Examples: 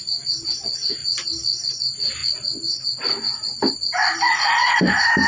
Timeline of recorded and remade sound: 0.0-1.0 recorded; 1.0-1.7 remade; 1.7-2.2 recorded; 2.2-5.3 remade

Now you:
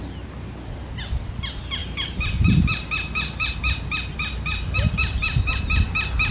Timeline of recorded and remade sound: 0.0-1.8 recorded; 1.8-5.6 remade; 5.6-6.3 recorded

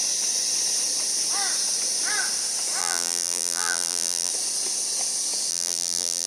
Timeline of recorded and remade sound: 0.0-2.8 recorded; 2.8-4.3 remade; 4.3-5.5 recorded; 5.5-6.3 remade

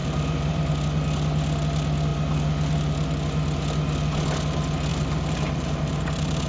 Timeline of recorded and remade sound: 0.0-0.7 remade; 0.7-4.9 recorded; 4.9-6.0 remade; 6.0-6.5 recorded

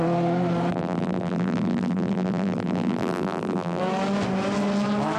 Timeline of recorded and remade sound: 0.0-0.7 recorded; 0.7-3.8 remade; 3.8-5.2 recorded

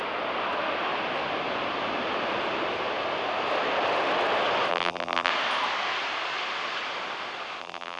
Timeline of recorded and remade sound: 0.0-4.7 recorded; 4.7-5.3 remade; 5.3-7.6 recorded; 7.6-8.0 remade

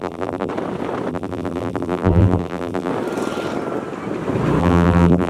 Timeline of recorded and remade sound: 0.0-0.5 remade; 0.5-1.1 recorded; 1.1-2.9 remade; 2.9-4.6 recorded; 4.6-5.3 remade

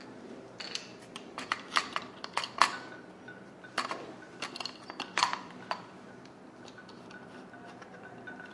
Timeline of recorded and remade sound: 0.0-0.9 recorded; 0.9-3.0 remade; 3.0-5.2 recorded; 5.2-8.5 remade